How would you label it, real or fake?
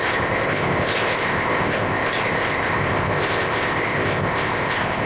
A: fake